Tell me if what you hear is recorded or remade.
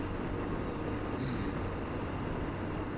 recorded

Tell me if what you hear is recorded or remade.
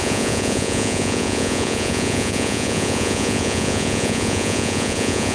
remade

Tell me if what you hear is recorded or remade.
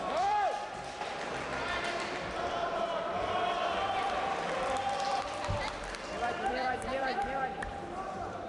remade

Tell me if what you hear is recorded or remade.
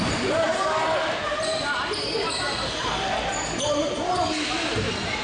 recorded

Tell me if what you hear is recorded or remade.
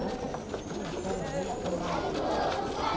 recorded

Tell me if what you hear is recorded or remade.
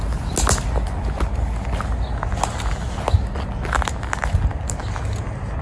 recorded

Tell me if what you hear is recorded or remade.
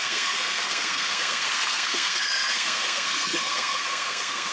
remade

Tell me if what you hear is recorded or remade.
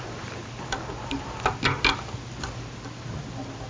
recorded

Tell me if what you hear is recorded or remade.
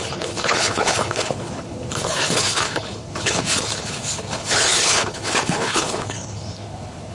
remade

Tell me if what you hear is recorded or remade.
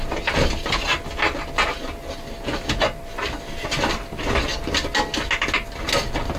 recorded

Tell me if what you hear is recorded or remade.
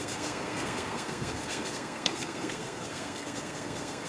remade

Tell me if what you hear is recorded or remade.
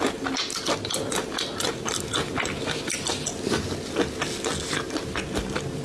recorded